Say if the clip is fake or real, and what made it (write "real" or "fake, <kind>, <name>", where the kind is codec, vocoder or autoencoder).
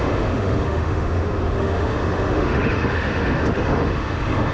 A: fake, autoencoder, DAC-VAE